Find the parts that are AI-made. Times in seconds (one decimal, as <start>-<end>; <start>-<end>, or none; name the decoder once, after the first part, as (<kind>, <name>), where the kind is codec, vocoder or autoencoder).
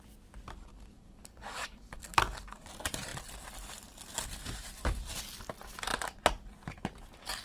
0.7-2.7 (codec, DAC)